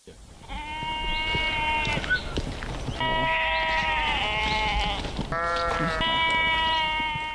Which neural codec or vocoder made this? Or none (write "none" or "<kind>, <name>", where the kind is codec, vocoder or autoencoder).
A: none